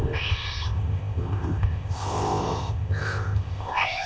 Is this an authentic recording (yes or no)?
no